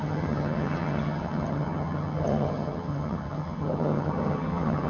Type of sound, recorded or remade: remade